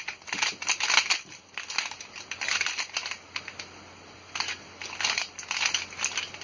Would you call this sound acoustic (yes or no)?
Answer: yes